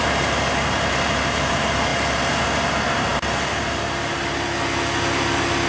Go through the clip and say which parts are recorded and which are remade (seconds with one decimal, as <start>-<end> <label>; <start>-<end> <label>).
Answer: 0.0-5.7 recorded